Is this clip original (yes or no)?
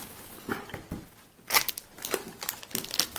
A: yes